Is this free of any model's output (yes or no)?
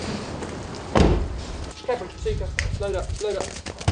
yes